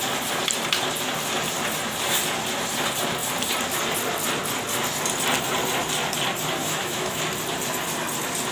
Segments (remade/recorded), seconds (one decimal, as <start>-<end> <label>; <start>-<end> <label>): 0.0-6.6 recorded; 6.6-7.2 remade; 7.2-8.5 recorded

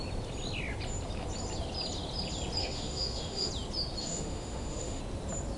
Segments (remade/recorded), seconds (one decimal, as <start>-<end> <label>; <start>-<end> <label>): 0.0-2.6 recorded; 2.6-3.5 remade; 3.5-4.0 recorded; 4.0-5.0 remade; 5.0-5.6 recorded

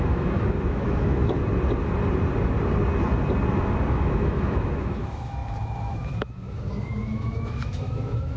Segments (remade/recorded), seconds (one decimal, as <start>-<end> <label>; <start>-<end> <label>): 0.0-1.4 remade; 1.4-3.9 recorded; 3.9-8.4 remade